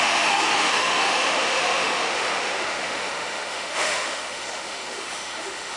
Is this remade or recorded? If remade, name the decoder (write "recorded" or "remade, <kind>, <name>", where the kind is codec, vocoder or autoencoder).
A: remade, autoencoder, DAC-VAE